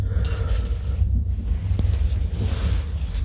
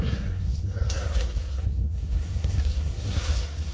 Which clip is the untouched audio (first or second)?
first